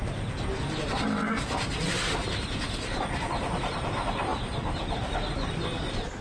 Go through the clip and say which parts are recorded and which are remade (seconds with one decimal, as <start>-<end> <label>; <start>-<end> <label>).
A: 0.0-6.2 recorded